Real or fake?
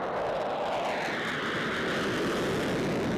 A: real